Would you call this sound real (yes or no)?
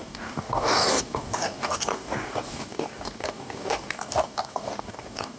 no